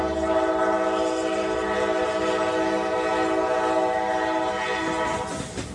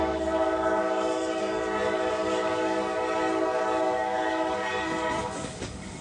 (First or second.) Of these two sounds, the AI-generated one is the second